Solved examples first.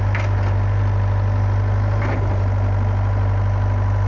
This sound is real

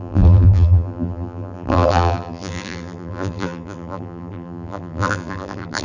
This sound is fake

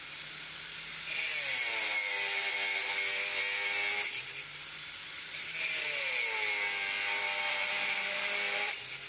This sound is real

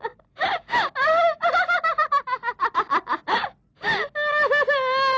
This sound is real